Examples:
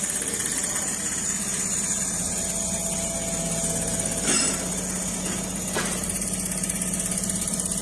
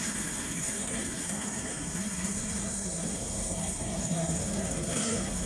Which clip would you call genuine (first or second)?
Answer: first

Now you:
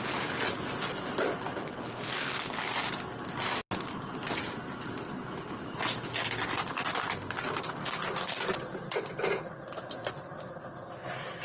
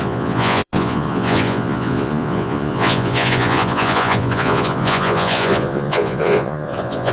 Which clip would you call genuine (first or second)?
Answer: first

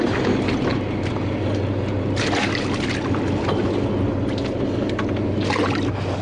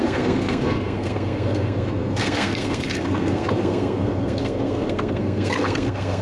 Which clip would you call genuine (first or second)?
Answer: first